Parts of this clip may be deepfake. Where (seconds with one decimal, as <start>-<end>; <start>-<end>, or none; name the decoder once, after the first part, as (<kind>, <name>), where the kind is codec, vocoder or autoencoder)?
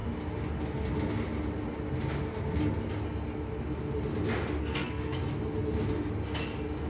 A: 4.6-5.2 (codec, SNAC)